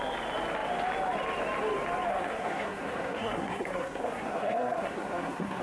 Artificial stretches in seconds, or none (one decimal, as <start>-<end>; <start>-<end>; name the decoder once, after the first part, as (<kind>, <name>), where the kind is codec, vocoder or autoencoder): 2.1-5.6 (codec, SNAC)